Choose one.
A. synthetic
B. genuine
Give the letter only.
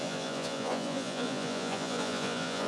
A